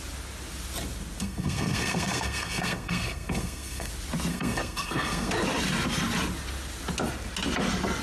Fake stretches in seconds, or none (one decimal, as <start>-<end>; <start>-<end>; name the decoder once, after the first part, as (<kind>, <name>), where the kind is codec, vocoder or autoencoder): 1.2-3.9 (codec, SNAC); 4.3-5.3